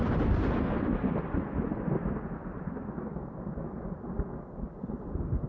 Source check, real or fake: real